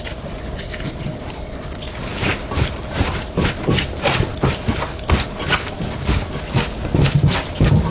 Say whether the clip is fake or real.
real